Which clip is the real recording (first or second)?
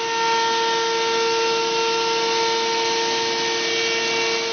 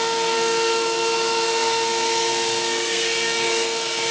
first